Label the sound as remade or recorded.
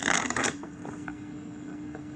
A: remade